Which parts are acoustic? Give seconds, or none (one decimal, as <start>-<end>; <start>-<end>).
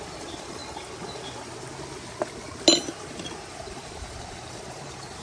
0.6-3.5